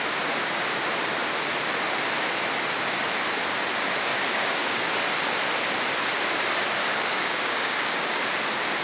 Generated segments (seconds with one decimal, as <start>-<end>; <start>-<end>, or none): 4.1-4.9; 6.8-8.2